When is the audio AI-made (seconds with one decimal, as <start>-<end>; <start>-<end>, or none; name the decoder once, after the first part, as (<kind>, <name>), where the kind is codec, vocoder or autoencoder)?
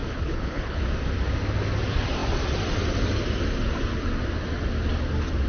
0.0-0.8 (codec, HILCodec)